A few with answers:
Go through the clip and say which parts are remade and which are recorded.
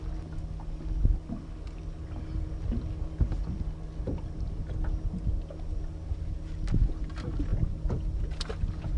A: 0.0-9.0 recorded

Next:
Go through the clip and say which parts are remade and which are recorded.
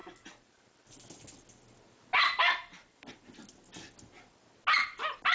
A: 0.0-5.3 recorded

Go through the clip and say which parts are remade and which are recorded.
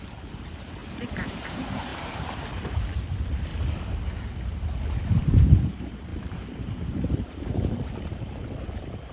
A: 0.0-3.5 remade; 3.5-5.2 recorded; 5.2-9.1 remade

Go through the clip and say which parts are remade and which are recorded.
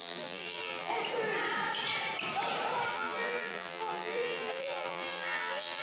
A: 0.0-0.9 remade; 0.9-2.9 recorded; 2.9-5.8 remade